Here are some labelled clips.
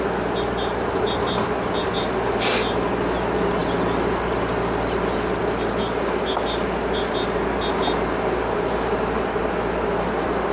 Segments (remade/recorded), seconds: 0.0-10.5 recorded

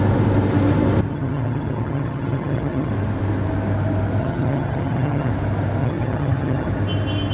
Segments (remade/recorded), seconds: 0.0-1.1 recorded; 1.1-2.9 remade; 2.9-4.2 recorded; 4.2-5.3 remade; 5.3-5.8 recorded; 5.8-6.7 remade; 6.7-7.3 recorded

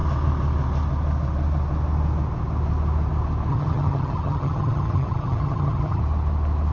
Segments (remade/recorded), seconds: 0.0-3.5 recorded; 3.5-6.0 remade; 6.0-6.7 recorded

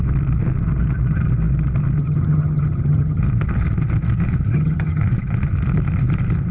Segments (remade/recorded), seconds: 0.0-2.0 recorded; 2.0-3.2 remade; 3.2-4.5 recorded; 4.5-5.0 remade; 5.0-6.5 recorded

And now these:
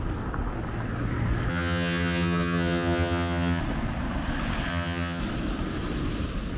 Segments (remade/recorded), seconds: 0.0-1.5 recorded; 1.5-3.6 remade; 3.6-4.7 recorded; 4.7-5.2 remade; 5.2-6.6 recorded

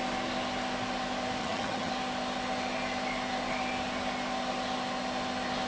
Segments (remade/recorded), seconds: 0.0-1.4 recorded; 1.4-1.9 remade; 1.9-5.7 recorded

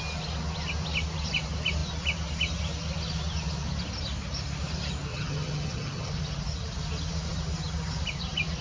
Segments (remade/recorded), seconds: 0.0-5.1 recorded; 5.1-6.1 remade; 6.1-8.6 recorded